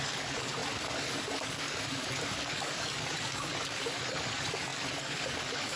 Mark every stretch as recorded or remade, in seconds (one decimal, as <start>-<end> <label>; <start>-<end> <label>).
0.0-5.8 remade